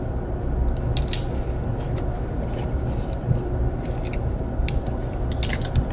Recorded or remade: recorded